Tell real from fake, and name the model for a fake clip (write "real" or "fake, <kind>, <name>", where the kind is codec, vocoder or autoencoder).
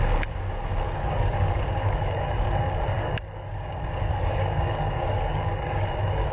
fake, codec, DAC